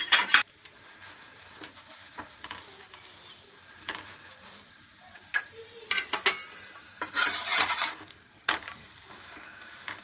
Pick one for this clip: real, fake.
fake